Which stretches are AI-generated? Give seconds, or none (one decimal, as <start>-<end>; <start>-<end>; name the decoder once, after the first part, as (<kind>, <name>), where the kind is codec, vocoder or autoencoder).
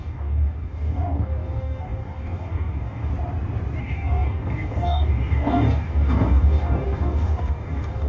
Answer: 0.0-3.1 (codec, DAC); 3.8-8.1